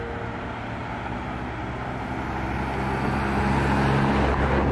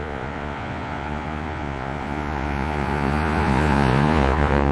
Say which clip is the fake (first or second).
second